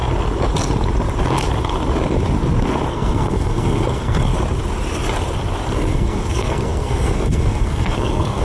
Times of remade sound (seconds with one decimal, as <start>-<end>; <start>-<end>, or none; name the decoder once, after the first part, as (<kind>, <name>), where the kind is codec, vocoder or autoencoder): 2.9-4.3 (codec, SNAC); 5.7-8.4